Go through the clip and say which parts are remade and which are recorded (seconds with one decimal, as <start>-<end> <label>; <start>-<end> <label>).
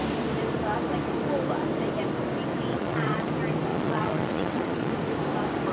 0.0-2.7 recorded; 2.7-3.3 remade; 3.3-3.7 recorded; 3.7-4.9 remade; 4.9-5.7 recorded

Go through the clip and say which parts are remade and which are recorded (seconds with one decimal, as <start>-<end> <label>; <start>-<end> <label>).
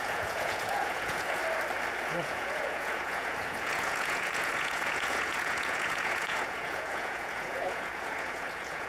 0.0-1.4 remade; 1.4-2.0 recorded; 2.0-8.9 remade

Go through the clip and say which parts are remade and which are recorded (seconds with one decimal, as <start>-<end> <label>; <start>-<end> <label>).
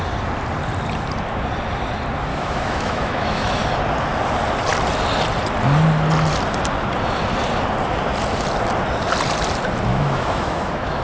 0.0-2.3 recorded; 2.3-3.6 remade; 3.6-9.9 recorded; 9.9-11.0 remade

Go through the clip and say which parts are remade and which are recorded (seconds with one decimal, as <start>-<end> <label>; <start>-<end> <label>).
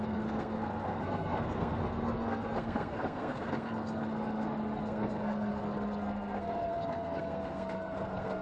0.0-8.4 remade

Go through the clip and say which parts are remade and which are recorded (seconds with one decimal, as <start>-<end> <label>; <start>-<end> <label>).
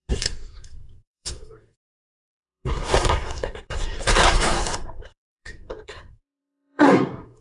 0.0-7.4 remade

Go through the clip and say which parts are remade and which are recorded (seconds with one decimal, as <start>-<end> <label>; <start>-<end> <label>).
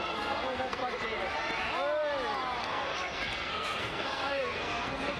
0.0-0.8 remade; 0.8-2.6 recorded; 2.6-5.2 remade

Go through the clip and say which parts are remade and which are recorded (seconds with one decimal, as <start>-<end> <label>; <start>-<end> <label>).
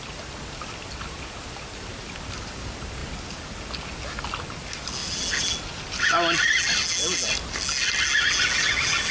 0.0-9.1 recorded